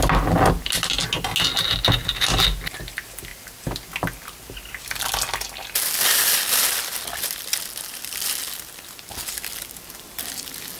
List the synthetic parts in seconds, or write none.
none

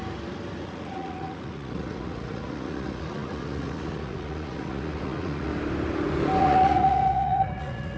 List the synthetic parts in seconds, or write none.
0.6-5.5 (vocoder, Vocos); 6.4-8.0

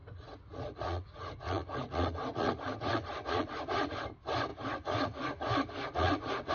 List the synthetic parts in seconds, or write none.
0.0-3.9 (vocoder, Vocos); 4.5-6.5